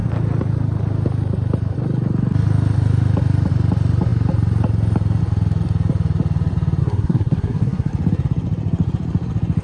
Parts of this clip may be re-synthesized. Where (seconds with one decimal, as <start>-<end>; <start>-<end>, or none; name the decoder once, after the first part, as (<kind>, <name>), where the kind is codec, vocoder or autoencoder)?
6.8-7.9 (codec, SNAC)